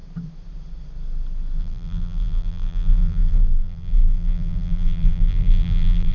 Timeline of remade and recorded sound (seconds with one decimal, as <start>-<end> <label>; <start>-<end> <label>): 0.0-1.6 recorded; 1.6-6.1 remade

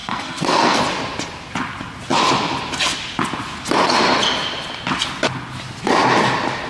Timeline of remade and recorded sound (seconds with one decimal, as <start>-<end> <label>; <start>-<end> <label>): 0.0-0.8 remade; 0.8-6.7 recorded

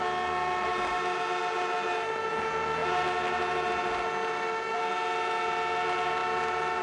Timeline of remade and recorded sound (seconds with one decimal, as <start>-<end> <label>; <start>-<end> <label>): 0.0-6.8 recorded

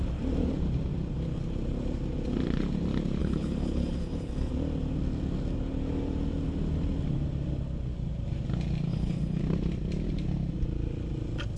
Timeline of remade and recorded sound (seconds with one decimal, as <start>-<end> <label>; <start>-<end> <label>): 0.0-3.2 recorded; 3.2-4.5 remade; 4.5-8.9 recorded; 8.9-9.4 remade; 9.4-11.6 recorded

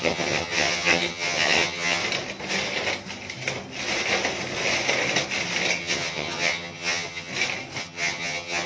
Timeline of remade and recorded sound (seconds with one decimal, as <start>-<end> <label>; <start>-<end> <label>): 0.0-2.0 remade; 2.0-5.8 recorded; 5.8-7.3 remade; 7.3-7.8 recorded; 7.8-8.7 remade

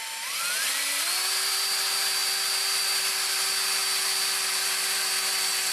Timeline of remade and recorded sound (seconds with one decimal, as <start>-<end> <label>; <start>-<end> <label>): 0.0-5.7 recorded